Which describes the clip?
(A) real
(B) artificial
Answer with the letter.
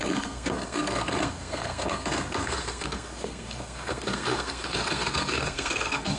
B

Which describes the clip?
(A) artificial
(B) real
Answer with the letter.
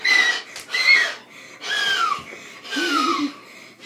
B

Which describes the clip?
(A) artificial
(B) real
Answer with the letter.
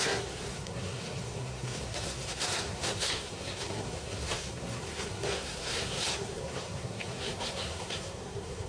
A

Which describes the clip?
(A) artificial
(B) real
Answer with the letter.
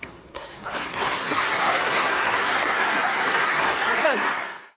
A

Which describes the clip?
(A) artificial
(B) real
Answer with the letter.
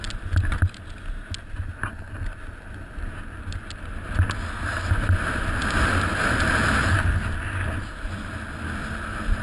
B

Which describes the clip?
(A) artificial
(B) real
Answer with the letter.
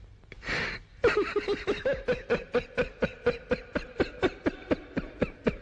B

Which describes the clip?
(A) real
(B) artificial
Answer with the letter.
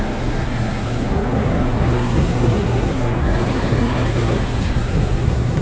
B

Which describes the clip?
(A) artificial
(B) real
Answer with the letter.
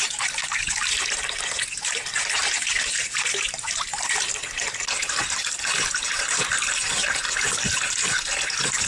B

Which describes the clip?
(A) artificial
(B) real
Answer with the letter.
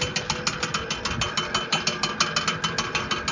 B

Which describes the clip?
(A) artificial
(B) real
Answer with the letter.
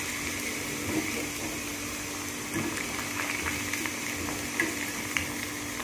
B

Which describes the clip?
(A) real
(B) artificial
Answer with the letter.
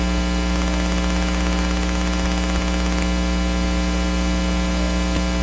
A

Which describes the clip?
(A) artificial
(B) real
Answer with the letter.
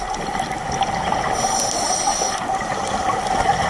B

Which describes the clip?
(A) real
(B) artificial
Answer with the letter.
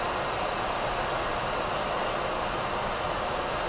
A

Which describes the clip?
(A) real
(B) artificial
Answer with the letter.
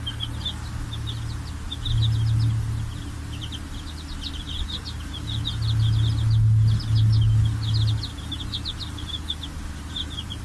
A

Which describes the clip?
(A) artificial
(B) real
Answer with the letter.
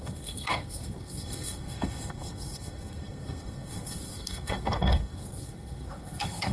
A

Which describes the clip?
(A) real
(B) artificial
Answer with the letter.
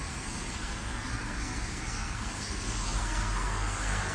B